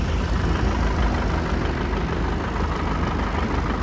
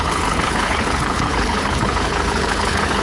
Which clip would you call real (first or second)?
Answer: first